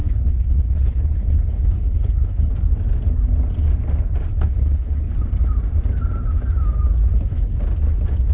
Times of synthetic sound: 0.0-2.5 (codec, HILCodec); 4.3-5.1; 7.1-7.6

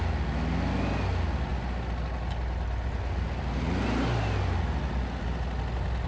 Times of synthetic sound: none

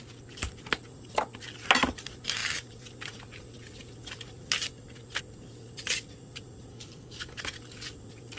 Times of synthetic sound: 6.7-7.4 (codec, HILCodec)